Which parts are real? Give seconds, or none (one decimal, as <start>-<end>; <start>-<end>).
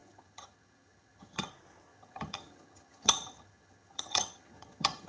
1.5-1.9